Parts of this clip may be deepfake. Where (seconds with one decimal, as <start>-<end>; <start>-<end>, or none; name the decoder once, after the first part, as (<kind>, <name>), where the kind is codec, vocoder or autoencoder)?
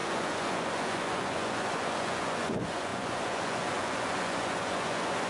0.0-5.3 (vocoder, Vocos)